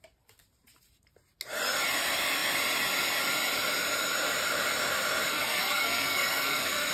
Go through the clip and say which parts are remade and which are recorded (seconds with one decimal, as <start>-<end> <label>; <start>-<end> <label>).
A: 0.0-5.3 recorded; 5.3-6.9 remade